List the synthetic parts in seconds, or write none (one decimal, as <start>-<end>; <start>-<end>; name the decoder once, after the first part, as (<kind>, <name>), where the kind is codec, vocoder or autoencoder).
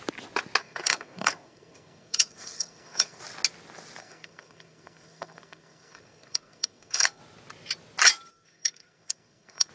0.6-3.2 (codec, SNAC); 4.0-7.2; 8.3-9.7